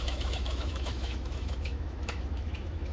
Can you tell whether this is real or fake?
fake